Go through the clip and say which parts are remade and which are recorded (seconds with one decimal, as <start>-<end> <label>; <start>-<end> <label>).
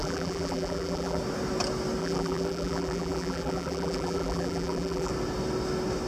0.0-1.2 remade; 1.2-2.0 recorded; 2.0-5.1 remade; 5.1-6.1 recorded